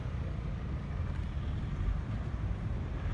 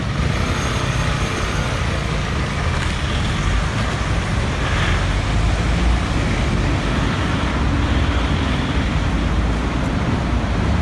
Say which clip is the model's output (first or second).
first